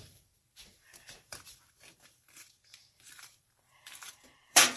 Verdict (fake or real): fake